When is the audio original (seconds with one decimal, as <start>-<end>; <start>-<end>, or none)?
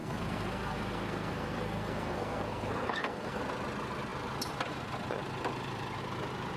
3.4-6.6